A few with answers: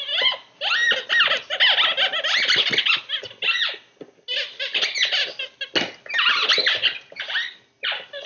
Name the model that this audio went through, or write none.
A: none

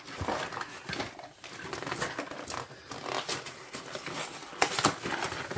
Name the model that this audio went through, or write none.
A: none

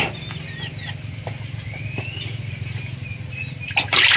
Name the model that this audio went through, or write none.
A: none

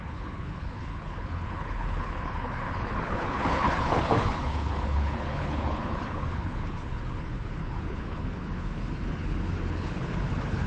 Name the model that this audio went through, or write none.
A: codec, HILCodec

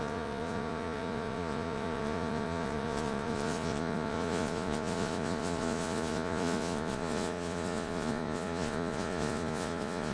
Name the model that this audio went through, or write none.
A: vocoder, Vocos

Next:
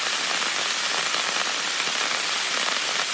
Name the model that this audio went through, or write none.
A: none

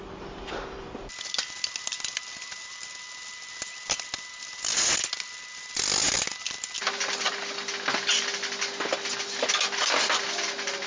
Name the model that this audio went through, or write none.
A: none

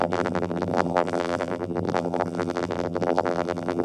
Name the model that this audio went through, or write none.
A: vocoder, BigVGAN v2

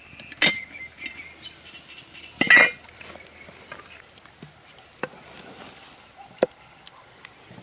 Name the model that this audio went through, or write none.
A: none